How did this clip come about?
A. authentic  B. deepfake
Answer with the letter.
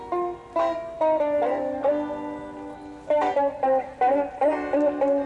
A